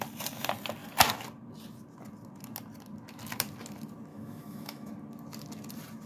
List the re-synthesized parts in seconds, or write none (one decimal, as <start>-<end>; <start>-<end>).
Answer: 4.1-4.9